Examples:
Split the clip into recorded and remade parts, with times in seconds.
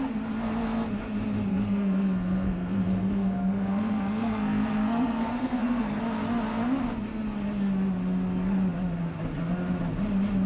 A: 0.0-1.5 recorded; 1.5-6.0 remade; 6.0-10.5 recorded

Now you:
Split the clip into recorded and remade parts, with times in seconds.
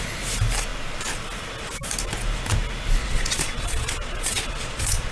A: 0.0-3.0 recorded; 3.0-5.1 remade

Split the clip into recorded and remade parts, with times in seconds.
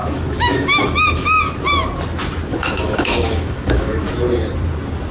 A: 0.0-1.4 remade; 1.4-2.5 recorded; 2.5-4.1 remade; 4.1-5.1 recorded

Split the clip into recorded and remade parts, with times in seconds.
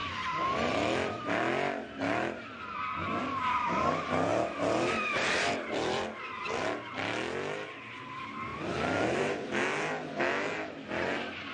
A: 0.0-1.2 remade; 1.2-4.3 recorded; 4.3-6.2 remade; 6.2-8.5 recorded; 8.5-9.5 remade; 9.5-11.5 recorded